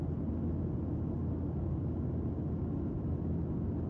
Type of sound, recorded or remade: recorded